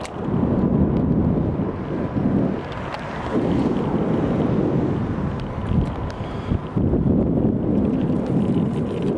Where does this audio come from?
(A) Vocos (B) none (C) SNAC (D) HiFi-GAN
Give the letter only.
B